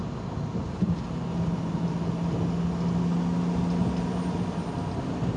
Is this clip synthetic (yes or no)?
no